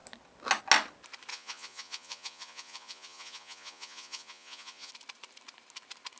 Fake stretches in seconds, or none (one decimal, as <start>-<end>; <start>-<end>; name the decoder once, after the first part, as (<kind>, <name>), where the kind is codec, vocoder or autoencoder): 1.3-4.9 (vocoder, Vocos)